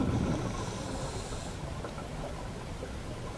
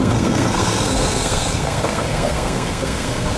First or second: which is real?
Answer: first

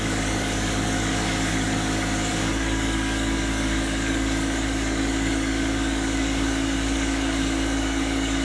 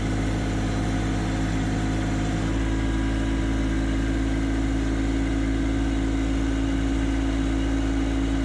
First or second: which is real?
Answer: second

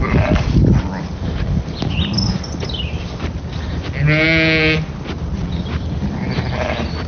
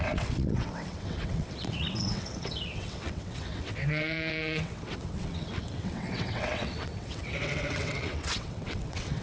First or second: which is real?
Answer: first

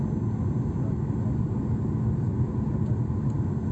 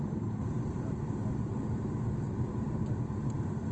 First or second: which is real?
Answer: first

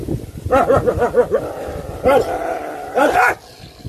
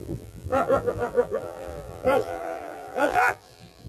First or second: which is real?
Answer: first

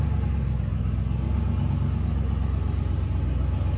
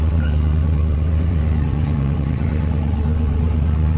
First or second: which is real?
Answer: first